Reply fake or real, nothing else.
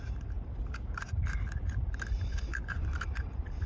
fake